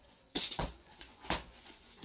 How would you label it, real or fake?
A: fake